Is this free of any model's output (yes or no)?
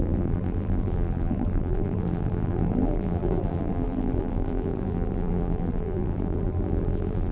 no